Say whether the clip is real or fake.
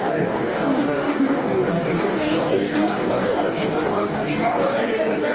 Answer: fake